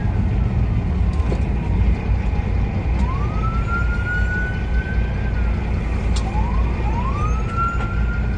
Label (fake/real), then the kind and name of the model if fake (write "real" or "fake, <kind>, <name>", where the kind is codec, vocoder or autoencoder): real